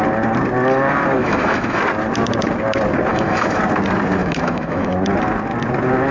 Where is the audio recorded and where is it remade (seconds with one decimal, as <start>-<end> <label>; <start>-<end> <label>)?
0.0-1.2 recorded; 1.2-1.8 remade; 1.8-3.1 recorded; 3.1-3.6 remade; 3.6-4.2 recorded; 4.2-4.9 remade; 4.9-6.1 recorded

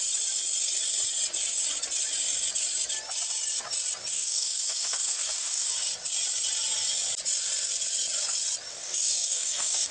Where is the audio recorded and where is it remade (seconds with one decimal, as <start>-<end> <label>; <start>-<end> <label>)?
0.0-4.1 recorded; 4.1-5.7 remade; 5.7-8.7 recorded; 8.7-9.9 remade

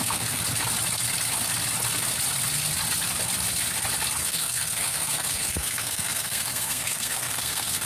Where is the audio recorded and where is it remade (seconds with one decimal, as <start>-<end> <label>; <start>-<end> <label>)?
0.0-0.4 remade; 0.4-4.2 recorded; 4.2-7.9 remade

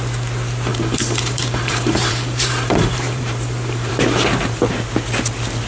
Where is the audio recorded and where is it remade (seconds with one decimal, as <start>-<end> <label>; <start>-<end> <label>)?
0.0-0.7 recorded; 0.7-3.9 remade; 3.9-5.7 recorded

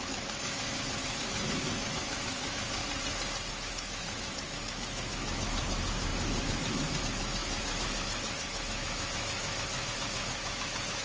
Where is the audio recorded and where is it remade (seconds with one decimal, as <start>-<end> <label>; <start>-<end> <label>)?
0.0-2.8 remade; 2.8-3.5 recorded; 3.5-11.0 remade

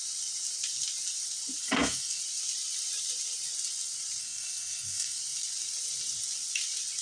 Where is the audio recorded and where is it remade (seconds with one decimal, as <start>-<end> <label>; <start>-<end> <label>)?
0.0-1.6 recorded; 1.6-2.2 remade; 2.2-4.2 recorded; 4.2-5.2 remade; 5.2-7.0 recorded

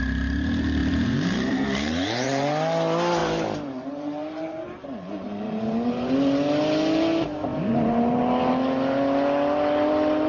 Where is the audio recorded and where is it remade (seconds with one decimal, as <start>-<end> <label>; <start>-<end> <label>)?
0.0-0.8 recorded; 0.8-2.5 remade; 2.5-3.2 recorded; 3.2-6.1 remade; 6.1-7.5 recorded; 7.5-8.2 remade; 8.2-10.3 recorded

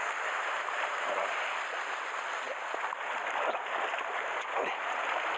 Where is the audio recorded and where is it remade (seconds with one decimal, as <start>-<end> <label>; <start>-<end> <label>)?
0.0-1.2 remade; 1.2-3.2 recorded; 3.2-5.4 remade